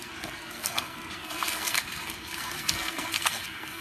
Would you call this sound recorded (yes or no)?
no